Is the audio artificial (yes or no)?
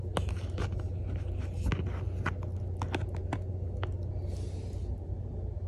no